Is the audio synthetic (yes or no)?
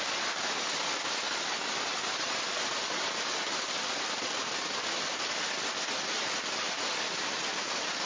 no